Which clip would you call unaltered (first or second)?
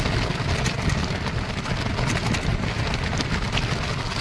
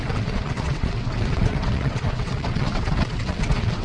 first